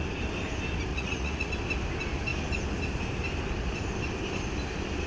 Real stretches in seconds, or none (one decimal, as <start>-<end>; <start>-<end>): 0.0-0.9; 1.5-5.1

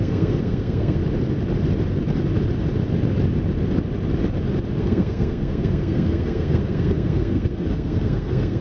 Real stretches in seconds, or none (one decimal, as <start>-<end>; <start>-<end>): 1.0-4.8